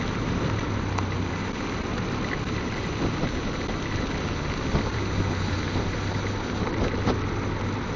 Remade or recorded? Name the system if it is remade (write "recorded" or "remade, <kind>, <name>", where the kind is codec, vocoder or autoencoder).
recorded